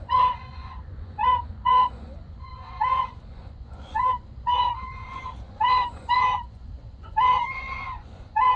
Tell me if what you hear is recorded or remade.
remade